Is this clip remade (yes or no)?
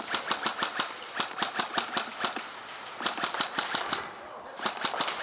no